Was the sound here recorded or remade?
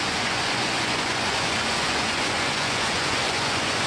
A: remade